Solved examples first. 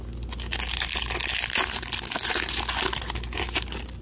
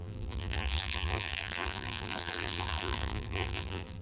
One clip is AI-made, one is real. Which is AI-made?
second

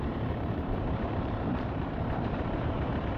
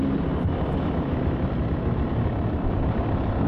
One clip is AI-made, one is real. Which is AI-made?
first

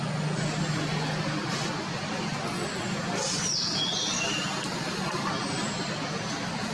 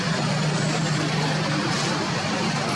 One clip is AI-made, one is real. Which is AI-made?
second